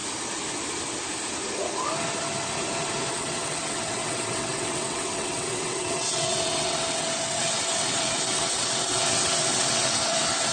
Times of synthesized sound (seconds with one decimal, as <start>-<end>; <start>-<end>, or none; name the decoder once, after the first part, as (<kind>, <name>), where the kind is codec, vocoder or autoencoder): 3.1-10.5 (vocoder, WaveNeXt)